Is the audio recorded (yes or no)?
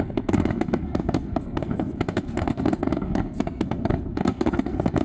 no